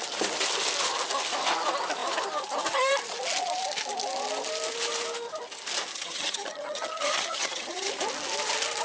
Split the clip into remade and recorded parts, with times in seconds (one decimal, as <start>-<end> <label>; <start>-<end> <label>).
0.0-5.9 recorded; 5.9-7.9 remade; 7.9-8.8 recorded